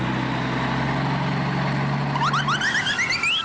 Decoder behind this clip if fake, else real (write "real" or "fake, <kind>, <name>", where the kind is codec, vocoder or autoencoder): real